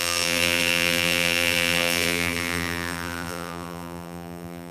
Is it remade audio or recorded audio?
remade